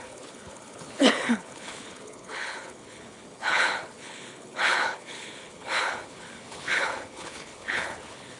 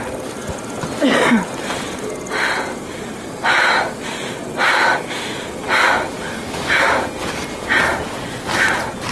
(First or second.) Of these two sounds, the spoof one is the first